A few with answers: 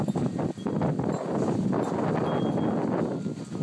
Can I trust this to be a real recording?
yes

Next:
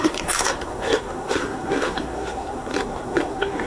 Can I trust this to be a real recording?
no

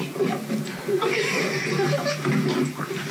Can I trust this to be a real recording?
yes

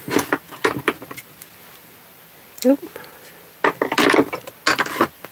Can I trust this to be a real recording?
yes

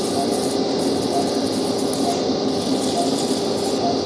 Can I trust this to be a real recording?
yes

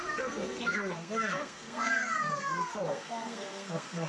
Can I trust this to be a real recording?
no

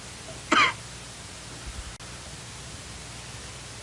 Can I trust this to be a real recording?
yes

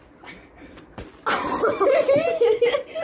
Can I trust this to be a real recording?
yes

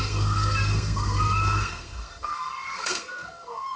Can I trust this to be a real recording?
no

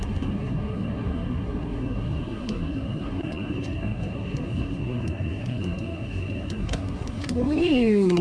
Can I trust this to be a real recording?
no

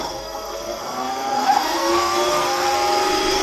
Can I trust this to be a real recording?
no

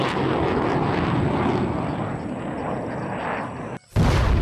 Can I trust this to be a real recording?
yes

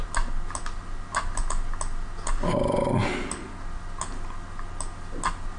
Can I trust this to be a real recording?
yes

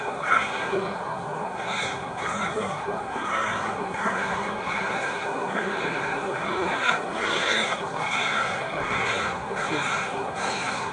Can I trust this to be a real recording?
no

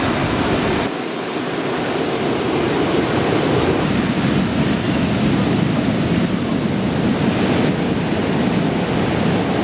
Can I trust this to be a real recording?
yes